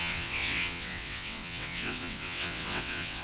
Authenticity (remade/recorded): remade